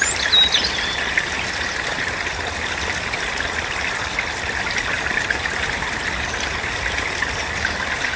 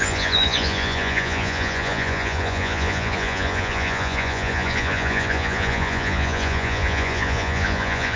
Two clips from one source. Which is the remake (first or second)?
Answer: second